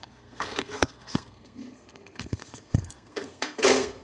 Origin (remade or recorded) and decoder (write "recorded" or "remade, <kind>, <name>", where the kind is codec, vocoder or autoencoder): remade, codec, SNAC